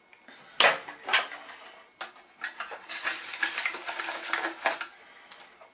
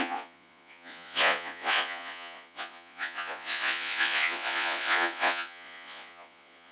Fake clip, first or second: second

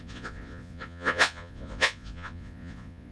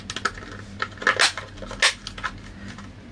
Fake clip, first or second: first